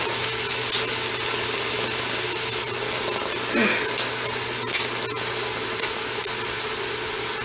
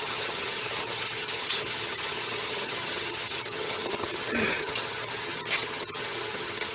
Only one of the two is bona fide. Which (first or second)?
first